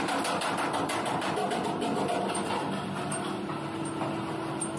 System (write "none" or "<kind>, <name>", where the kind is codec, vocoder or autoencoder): none